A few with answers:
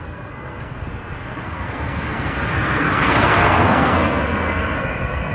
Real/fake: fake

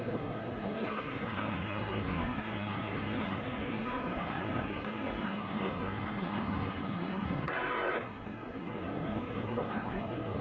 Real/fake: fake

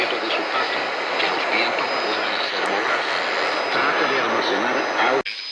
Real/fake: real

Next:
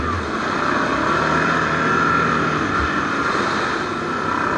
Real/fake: real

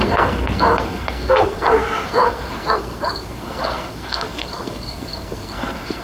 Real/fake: fake